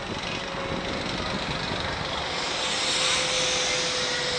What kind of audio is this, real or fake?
real